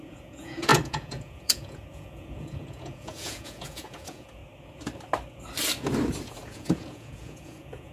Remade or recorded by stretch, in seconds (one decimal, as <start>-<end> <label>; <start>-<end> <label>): 0.0-4.4 remade; 4.4-6.2 recorded; 6.2-7.9 remade